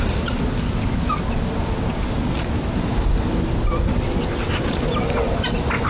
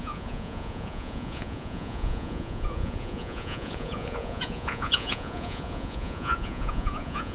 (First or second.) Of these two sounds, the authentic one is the first